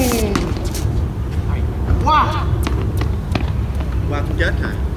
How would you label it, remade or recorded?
recorded